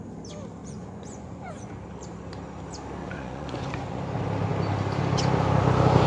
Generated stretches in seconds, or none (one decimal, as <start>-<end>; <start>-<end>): 0.6-1.7; 3.0-4.0